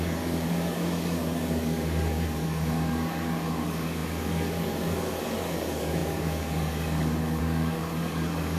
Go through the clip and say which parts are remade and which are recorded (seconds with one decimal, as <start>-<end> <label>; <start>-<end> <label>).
0.0-8.6 remade